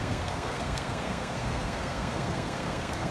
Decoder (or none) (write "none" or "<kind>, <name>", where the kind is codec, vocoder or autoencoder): codec, SNAC